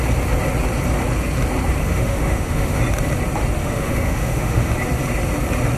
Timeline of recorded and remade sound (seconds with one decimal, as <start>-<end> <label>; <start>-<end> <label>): 0.0-1.8 recorded; 1.8-2.8 remade; 2.8-3.6 recorded; 3.6-4.7 remade; 4.7-5.8 recorded